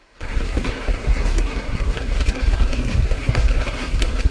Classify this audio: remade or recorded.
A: remade